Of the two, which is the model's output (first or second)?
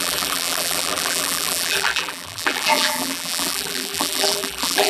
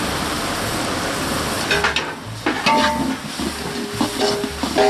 first